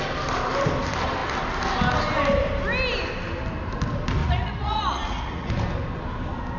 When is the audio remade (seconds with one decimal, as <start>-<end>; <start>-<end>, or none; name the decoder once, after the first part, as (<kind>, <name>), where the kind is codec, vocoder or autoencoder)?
4.2-5.5 (vocoder, Vocos)